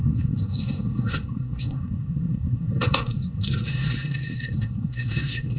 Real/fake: fake